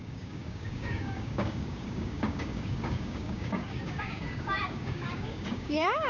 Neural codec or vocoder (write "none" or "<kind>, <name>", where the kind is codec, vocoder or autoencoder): codec, DAC